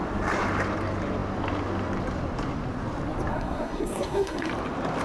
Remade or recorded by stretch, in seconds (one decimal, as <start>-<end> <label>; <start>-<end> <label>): 0.0-3.3 recorded; 3.3-4.5 remade; 4.5-5.0 recorded